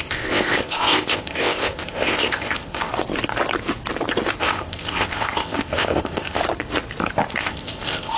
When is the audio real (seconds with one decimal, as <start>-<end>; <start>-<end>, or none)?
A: 2.9-4.4; 6.4-7.4